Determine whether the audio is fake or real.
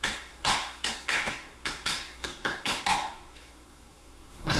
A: fake